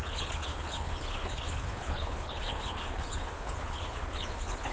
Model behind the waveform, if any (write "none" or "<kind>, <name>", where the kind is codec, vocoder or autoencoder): codec, HILCodec